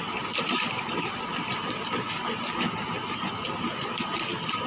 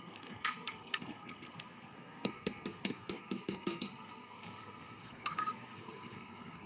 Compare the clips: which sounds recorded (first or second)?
first